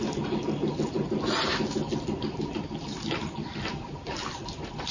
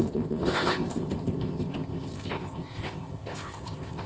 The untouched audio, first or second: first